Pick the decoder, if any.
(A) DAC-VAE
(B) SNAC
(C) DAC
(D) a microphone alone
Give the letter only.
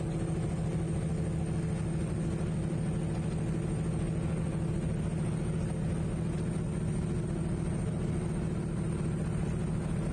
D